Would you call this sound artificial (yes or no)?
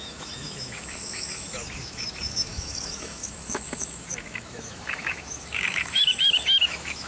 yes